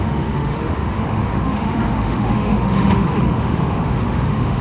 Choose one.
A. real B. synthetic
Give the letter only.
B